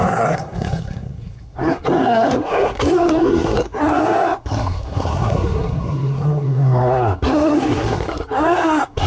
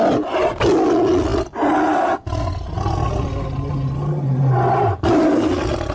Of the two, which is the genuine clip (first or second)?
second